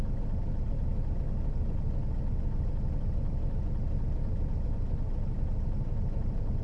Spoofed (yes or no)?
no